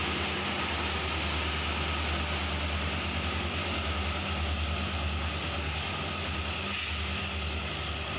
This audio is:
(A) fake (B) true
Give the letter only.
B